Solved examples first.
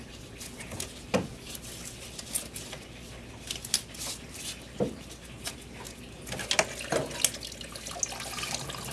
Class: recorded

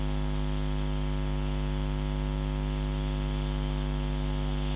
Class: recorded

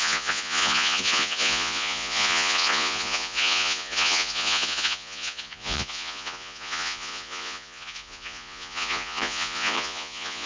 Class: remade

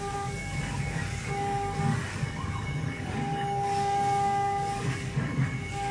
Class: remade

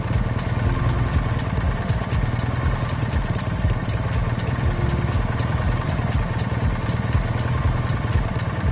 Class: recorded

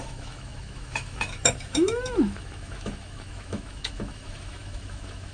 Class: remade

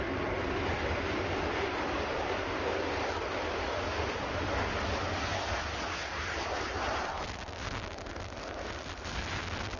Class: recorded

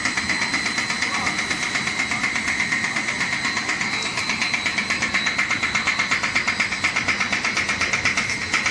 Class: recorded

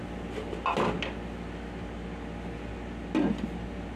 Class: recorded